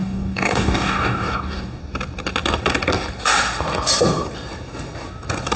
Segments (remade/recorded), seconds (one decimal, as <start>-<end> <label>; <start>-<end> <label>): 0.0-1.8 remade; 1.8-5.6 recorded